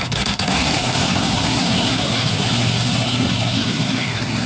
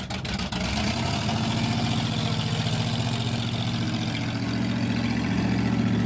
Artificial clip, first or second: first